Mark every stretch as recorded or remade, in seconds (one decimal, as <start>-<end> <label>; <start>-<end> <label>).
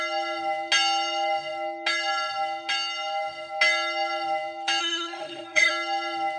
0.0-4.8 recorded; 4.8-5.7 remade; 5.7-6.4 recorded